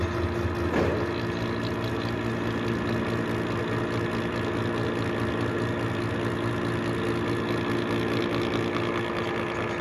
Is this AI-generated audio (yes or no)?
no